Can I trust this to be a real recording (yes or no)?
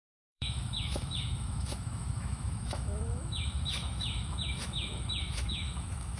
no